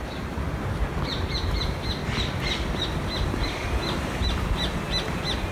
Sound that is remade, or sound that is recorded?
recorded